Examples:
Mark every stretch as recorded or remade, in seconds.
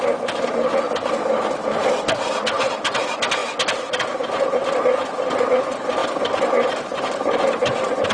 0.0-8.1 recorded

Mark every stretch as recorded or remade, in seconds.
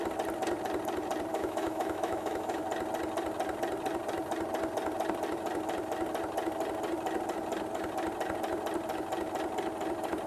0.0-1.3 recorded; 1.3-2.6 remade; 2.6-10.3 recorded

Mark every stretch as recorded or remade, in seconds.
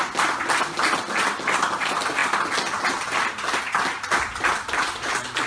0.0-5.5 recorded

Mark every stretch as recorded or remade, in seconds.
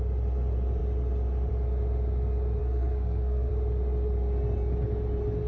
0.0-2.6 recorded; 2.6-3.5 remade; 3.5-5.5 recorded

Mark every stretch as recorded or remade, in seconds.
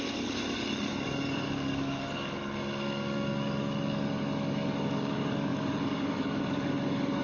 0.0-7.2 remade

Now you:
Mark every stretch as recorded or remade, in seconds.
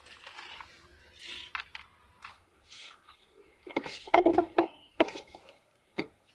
0.0-2.3 recorded; 2.3-6.3 remade